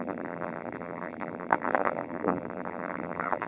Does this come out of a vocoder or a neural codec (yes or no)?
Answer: yes